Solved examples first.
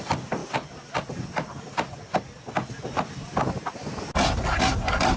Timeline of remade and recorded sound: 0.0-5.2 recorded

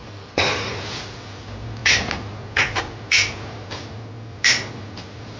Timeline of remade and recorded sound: 0.0-0.7 remade; 0.7-5.4 recorded

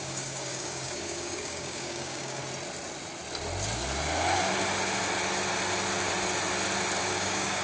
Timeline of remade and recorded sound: 0.0-2.4 remade; 2.4-7.0 recorded; 7.0-7.6 remade

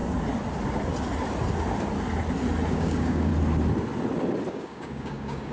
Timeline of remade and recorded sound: 0.0-2.7 recorded; 2.7-3.3 remade; 3.3-4.5 recorded; 4.5-5.5 remade

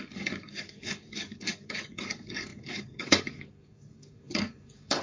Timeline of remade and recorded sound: 0.0-5.0 remade

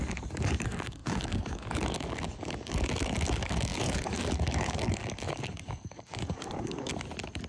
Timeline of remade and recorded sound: 0.0-6.9 remade; 6.9-7.5 recorded

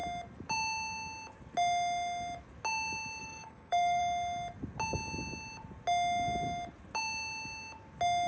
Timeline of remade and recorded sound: 0.0-3.2 recorded; 3.2-4.0 remade; 4.0-8.3 recorded

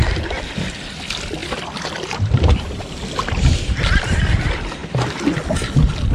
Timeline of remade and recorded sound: 0.0-6.1 recorded